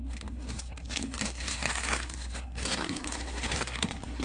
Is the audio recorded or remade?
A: remade